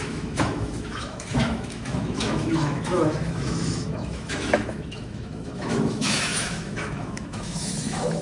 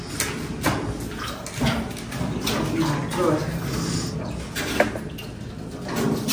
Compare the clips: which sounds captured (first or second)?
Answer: second